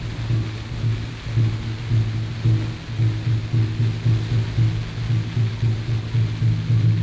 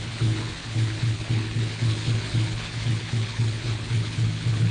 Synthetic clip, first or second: second